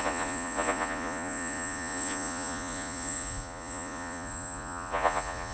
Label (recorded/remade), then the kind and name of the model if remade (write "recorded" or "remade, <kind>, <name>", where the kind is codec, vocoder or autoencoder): remade, vocoder, Vocos